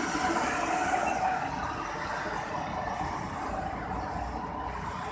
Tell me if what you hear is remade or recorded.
recorded